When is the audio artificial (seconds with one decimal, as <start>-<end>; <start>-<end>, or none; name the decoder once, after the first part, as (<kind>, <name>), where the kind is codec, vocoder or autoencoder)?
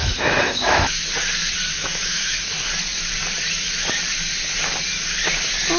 0.0-1.0 (autoencoder, DAC-VAE); 1.8-2.4